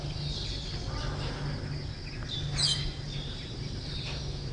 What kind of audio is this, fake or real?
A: real